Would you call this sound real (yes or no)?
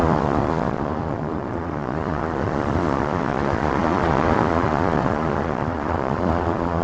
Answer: no